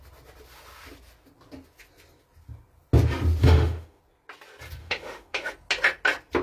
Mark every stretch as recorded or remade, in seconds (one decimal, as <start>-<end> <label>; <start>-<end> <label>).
0.0-3.4 recorded; 3.4-4.0 remade; 4.0-4.8 recorded; 4.8-5.5 remade; 5.5-6.4 recorded